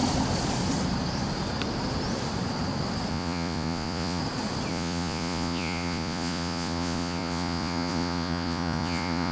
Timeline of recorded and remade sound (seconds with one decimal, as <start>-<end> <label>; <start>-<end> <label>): 0.0-3.1 recorded; 3.1-4.2 remade; 4.2-4.7 recorded; 4.7-9.3 remade

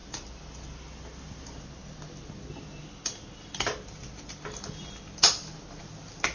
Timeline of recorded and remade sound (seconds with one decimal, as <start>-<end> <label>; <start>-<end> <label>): 0.0-6.3 recorded

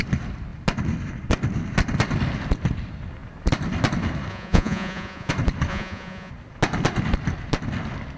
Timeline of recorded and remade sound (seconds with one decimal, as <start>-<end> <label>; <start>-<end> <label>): 0.0-4.3 recorded; 4.3-5.3 remade; 5.3-5.7 recorded; 5.7-6.3 remade; 6.3-8.2 recorded